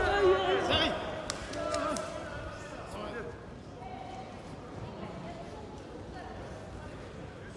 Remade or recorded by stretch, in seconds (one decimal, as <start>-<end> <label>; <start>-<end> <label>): 0.0-7.6 recorded